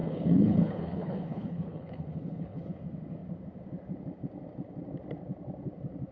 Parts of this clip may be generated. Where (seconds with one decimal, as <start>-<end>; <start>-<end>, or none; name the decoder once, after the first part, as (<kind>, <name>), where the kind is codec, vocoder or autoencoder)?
0.0-2.7 (codec, HILCodec)